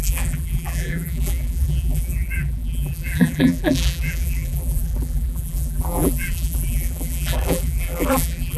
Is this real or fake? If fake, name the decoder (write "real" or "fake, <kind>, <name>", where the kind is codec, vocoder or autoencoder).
fake, vocoder, BigVGAN v2